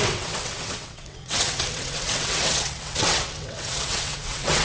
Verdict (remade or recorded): remade